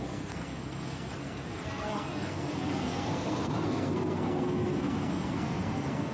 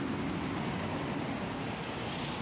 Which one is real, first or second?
second